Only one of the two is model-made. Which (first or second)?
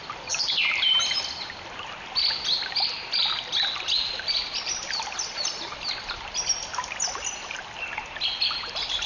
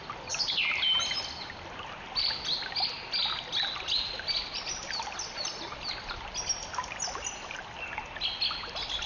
first